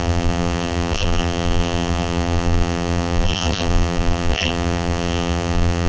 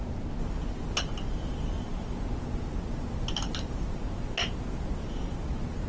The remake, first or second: first